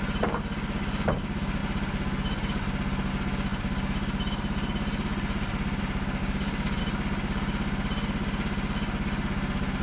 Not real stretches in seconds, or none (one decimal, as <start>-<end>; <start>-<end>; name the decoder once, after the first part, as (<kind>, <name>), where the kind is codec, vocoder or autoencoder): 6.2-6.8 (codec, DAC)